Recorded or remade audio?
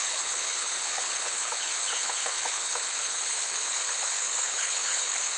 remade